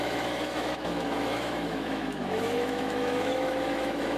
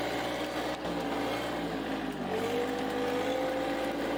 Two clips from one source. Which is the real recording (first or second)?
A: second